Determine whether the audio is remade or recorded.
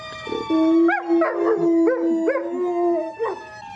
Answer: recorded